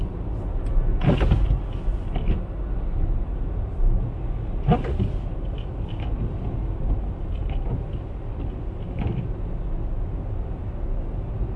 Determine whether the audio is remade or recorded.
recorded